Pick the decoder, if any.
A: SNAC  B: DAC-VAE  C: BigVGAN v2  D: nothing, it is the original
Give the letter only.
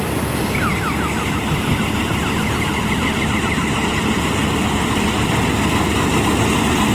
D